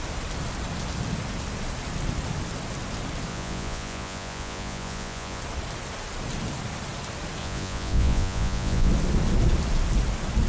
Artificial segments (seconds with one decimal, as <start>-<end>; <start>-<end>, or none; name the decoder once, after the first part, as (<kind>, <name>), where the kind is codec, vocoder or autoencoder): 3.3-5.4 (vocoder, Vocos); 7.4-8.9